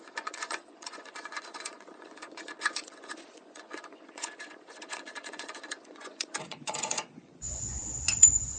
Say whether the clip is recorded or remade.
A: remade